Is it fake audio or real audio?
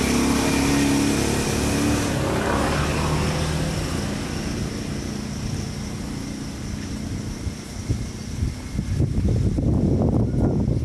real